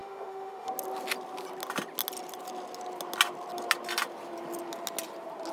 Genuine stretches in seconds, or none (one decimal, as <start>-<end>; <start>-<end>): 0.7-5.5

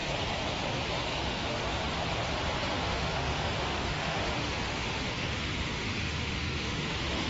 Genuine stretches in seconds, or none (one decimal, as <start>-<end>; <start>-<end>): 0.0-1.1; 1.8-2.7